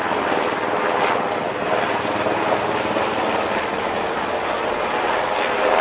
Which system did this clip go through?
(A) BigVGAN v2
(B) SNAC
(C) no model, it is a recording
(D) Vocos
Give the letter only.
C